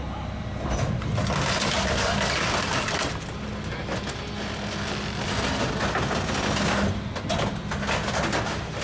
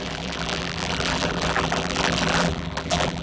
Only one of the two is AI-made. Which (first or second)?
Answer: second